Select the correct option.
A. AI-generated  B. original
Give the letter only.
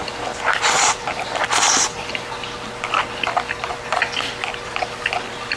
B